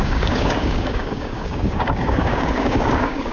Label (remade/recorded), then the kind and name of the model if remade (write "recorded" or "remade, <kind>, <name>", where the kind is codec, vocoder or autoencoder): remade, codec, DAC